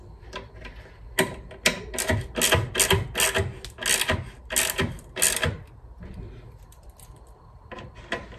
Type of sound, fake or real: real